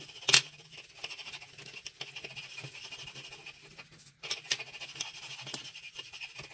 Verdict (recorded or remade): recorded